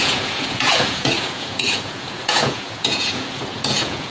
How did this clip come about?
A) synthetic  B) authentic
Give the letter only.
A